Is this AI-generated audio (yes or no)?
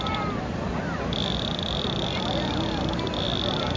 no